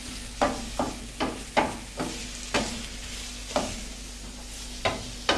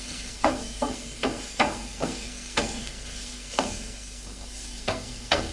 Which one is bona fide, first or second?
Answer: first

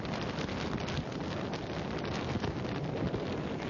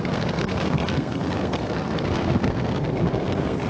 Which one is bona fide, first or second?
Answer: first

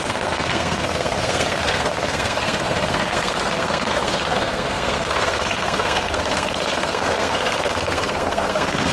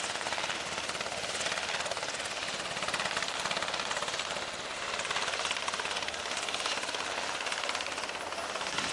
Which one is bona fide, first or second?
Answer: second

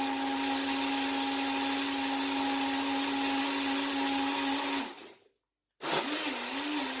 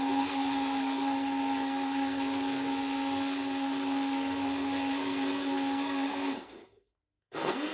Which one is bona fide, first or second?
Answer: first